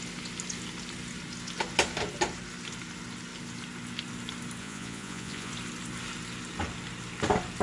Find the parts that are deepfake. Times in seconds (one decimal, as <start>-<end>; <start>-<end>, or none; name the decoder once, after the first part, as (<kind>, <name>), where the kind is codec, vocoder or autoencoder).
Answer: 4.6-5.5 (vocoder, Vocos)